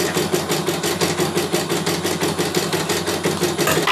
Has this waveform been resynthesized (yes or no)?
no